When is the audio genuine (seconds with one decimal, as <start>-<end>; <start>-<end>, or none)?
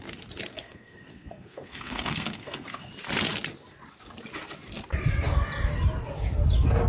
0.0-0.5; 2.9-6.9